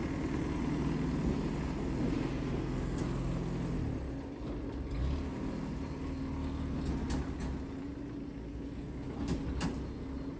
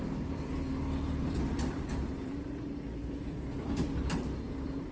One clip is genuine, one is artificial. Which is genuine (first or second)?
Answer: first